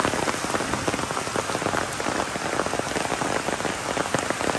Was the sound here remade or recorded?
recorded